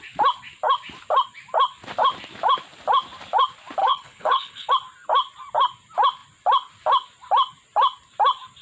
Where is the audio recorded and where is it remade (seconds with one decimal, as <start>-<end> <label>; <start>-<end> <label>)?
0.0-3.8 recorded; 3.8-4.7 remade; 4.7-8.6 recorded